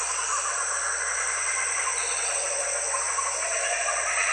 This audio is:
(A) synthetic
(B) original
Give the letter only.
B